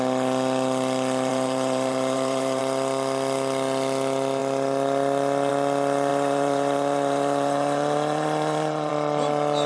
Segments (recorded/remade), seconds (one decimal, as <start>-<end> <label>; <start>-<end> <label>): 0.0-1.3 recorded; 1.3-2.6 remade; 2.6-6.1 recorded; 6.1-8.9 remade; 8.9-9.7 recorded